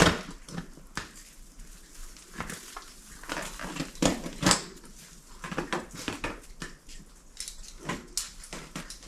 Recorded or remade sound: recorded